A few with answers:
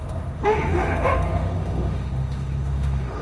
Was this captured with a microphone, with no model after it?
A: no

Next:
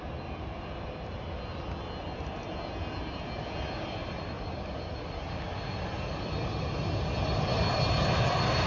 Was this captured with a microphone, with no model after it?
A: yes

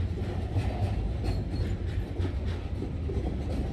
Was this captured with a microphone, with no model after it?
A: yes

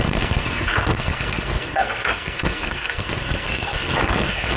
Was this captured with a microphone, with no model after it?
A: no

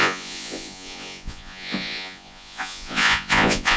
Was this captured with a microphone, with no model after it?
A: no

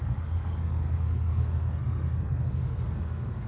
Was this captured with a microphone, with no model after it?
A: no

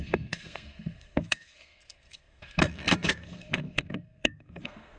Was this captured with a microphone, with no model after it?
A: no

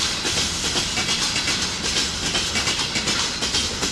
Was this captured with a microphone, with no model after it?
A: yes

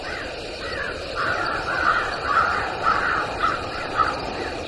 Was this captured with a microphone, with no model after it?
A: no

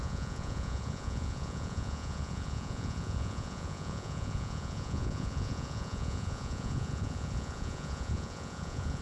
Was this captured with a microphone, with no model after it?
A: no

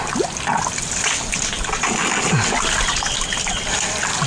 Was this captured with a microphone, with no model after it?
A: yes